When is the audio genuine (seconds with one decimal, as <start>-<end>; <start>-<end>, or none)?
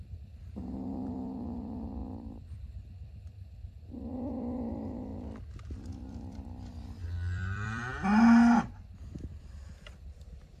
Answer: 2.0-4.1; 5.1-6.3; 7.9-9.0